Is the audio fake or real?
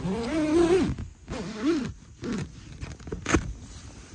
real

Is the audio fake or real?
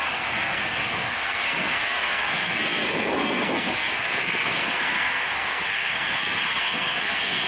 fake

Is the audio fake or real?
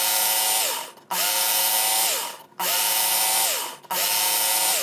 real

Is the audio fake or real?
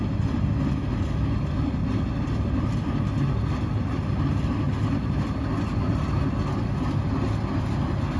real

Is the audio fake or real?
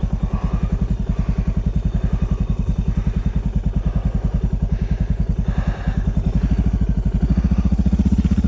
real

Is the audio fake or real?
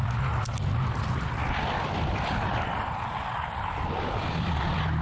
real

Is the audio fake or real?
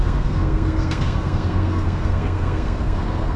fake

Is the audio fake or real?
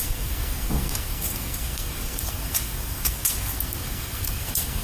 fake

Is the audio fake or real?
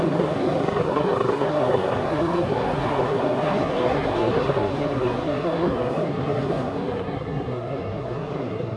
fake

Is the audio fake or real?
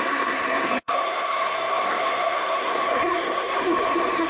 fake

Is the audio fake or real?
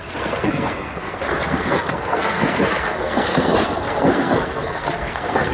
fake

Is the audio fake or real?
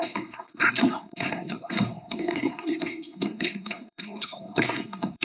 fake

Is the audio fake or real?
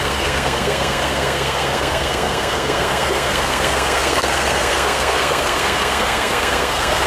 fake